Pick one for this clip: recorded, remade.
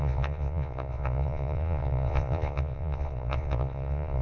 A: remade